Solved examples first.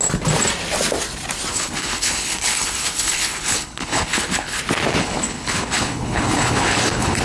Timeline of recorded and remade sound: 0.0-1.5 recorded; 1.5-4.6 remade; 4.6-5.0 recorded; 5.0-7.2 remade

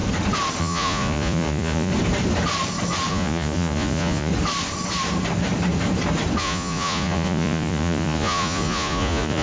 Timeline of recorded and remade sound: 0.0-0.6 recorded; 0.6-1.9 remade; 1.9-3.1 recorded; 3.1-4.3 remade; 4.3-6.4 recorded; 6.4-9.4 remade